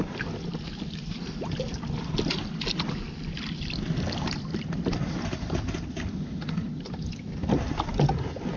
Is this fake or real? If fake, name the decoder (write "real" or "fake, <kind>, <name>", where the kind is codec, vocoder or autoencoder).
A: real